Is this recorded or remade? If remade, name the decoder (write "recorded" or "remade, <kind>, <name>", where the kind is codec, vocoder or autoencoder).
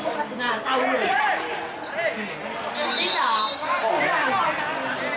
recorded